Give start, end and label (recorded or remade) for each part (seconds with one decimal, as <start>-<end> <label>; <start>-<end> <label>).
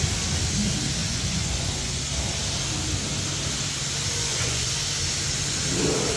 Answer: 0.0-1.0 recorded; 1.0-2.0 remade; 2.0-4.2 recorded; 4.2-4.7 remade; 4.7-6.2 recorded